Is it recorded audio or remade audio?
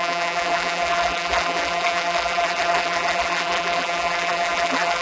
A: remade